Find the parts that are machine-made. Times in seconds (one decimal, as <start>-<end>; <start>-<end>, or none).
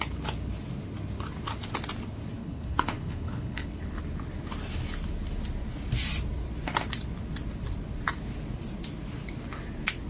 2.4-4.0